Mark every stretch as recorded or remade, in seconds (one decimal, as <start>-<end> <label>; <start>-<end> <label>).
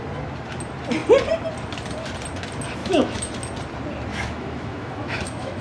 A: 0.0-2.8 recorded; 2.8-3.3 remade; 3.3-4.1 recorded; 4.1-5.6 remade